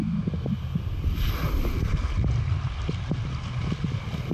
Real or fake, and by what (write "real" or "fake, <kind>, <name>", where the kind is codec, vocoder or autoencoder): real